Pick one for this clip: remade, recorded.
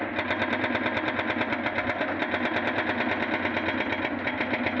recorded